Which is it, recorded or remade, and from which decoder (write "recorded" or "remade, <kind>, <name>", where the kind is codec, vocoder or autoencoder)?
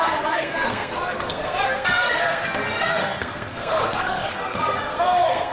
remade, codec, SNAC